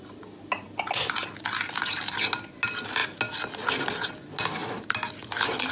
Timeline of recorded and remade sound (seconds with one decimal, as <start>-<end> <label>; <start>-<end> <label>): 0.0-5.7 recorded

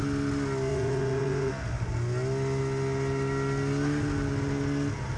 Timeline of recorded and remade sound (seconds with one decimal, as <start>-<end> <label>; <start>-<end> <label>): 0.0-0.7 recorded; 0.7-1.5 remade; 1.5-5.2 recorded

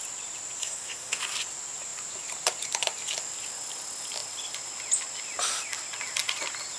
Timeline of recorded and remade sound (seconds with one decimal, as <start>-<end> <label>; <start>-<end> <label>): 0.0-0.6 recorded; 0.6-1.2 remade; 1.2-6.8 recorded

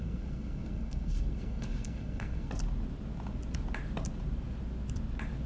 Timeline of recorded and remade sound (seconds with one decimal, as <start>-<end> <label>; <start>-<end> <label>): 0.0-2.5 remade; 2.5-5.5 recorded